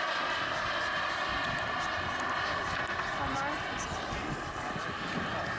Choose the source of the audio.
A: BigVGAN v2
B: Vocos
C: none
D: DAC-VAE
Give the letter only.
C